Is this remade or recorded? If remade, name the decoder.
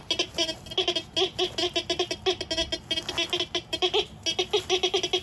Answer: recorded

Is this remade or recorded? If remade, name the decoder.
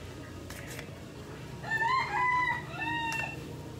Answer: recorded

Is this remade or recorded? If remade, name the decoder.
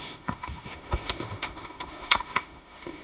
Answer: remade, autoencoder, DAC-VAE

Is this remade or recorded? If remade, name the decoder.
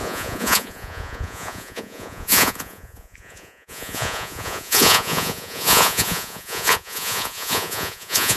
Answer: remade, vocoder, Vocos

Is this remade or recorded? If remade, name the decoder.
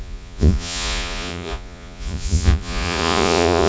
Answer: remade, vocoder, Vocos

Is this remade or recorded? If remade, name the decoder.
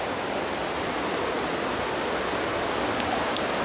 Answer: recorded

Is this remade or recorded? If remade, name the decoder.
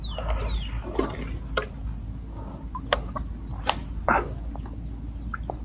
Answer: recorded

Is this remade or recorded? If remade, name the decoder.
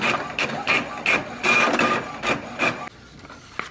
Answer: recorded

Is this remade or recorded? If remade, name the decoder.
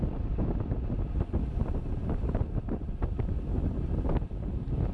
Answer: recorded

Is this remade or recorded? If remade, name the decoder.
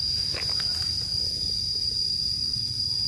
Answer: recorded